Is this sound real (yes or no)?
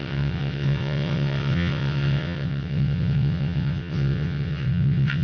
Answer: no